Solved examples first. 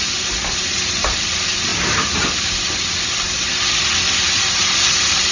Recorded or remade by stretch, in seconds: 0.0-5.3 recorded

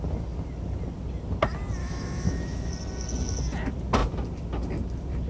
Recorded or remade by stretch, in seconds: 0.0-1.8 recorded; 1.8-2.7 remade; 2.7-5.3 recorded

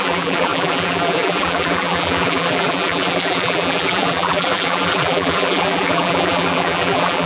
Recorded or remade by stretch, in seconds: 0.0-7.3 remade

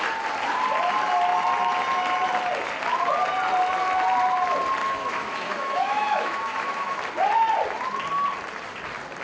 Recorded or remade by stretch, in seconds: 0.0-4.8 recorded; 4.8-7.0 remade; 7.0-9.2 recorded

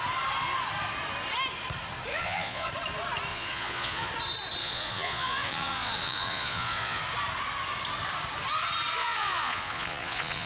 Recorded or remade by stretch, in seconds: 0.0-2.1 recorded; 2.1-2.7 remade; 2.7-3.3 recorded; 3.3-4.1 remade; 4.1-4.6 recorded; 4.6-7.0 remade; 7.0-9.0 recorded; 9.0-10.5 remade